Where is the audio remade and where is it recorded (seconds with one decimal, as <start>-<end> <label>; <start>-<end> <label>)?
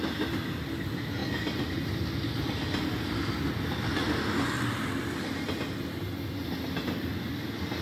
0.0-7.8 recorded